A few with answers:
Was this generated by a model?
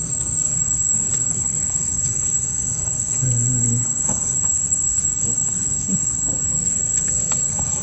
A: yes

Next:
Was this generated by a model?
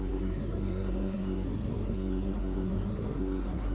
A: yes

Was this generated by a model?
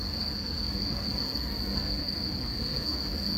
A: yes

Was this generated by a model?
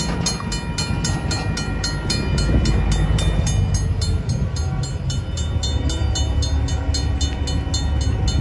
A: no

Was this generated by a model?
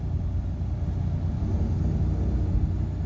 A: no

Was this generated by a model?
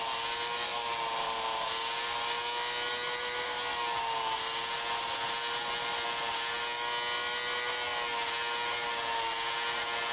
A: no